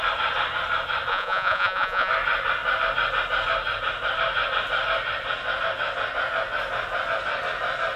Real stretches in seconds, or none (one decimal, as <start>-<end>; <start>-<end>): 0.0-1.1; 2.1-8.0